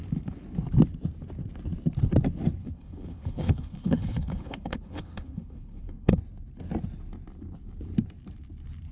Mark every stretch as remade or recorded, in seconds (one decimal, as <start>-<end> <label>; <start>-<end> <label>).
0.0-2.6 recorded; 2.6-6.2 remade; 6.2-8.9 recorded